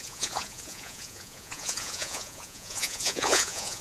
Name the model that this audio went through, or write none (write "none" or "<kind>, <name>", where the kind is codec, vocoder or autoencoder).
vocoder, Vocos